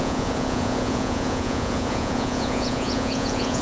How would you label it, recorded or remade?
remade